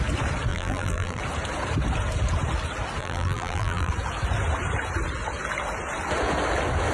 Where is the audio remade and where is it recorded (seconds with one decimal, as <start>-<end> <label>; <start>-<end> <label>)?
0.0-0.5 recorded; 0.5-1.2 remade; 1.2-3.0 recorded; 3.0-3.9 remade; 3.9-6.9 recorded